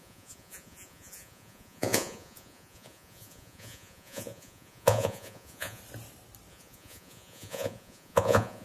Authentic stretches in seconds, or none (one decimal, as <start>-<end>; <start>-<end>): 5.8-6.5